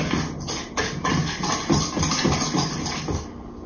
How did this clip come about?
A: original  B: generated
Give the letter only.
A